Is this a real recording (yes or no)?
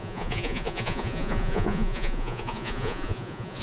no